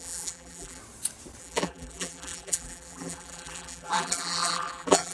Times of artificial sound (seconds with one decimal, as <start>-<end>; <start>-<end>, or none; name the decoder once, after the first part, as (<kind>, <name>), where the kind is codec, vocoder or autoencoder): 0.0-0.8 (vocoder, BigVGAN v2); 1.4-5.1